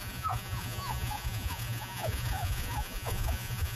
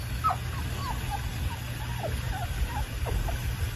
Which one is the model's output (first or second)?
first